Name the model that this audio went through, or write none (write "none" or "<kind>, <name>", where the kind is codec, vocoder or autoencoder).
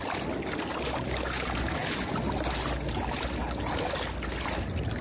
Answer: none